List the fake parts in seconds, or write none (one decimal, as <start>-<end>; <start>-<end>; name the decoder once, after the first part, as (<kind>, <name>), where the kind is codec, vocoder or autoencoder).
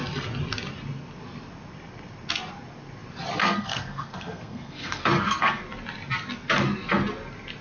3.4-5.6 (codec, SNAC)